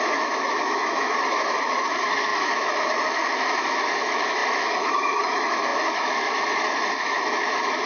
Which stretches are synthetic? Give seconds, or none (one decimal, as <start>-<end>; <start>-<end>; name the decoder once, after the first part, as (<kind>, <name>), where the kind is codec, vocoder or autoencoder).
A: 0.0-7.9 (autoencoder, DAC-VAE)